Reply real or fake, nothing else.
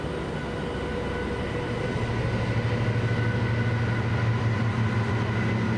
real